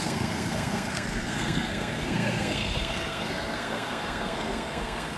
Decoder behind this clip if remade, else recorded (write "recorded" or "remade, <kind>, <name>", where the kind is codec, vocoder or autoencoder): remade, codec, SNAC